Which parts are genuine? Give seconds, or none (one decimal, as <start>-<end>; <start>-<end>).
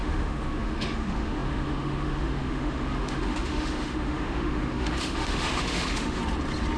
6.2-6.8